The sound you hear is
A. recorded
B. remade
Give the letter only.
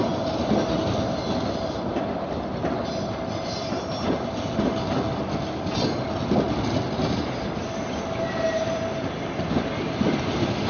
A